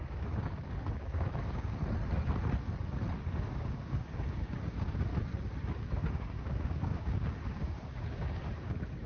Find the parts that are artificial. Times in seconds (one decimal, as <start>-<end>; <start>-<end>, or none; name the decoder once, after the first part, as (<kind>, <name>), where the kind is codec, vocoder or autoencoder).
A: 0.0-1.8 (codec, DAC); 3.4-5.1; 5.7-9.1